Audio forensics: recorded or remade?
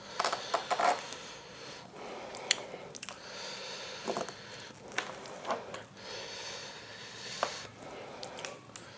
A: recorded